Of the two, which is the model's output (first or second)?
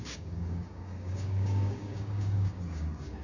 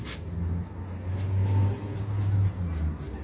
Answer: first